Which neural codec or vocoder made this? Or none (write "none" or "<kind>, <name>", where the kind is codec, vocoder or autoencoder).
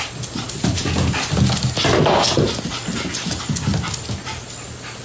none